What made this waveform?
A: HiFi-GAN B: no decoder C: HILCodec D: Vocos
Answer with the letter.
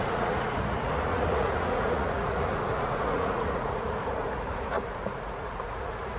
D